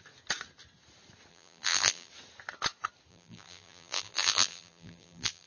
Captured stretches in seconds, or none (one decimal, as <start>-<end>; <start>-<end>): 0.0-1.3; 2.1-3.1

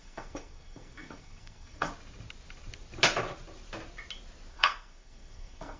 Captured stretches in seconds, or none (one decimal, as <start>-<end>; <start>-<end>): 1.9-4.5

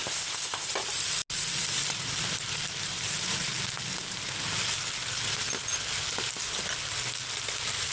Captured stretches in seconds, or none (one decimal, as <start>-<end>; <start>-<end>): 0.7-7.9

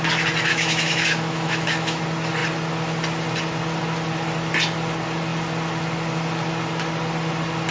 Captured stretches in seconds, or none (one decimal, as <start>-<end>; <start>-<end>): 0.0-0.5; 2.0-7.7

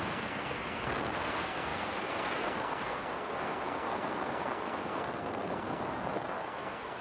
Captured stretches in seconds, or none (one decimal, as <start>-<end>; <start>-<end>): none